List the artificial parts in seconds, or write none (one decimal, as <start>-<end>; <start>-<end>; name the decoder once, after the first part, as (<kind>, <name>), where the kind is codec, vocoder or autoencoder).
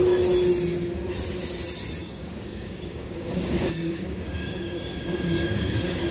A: 2.0-6.1 (codec, DAC)